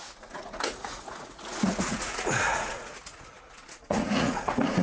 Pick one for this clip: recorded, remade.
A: remade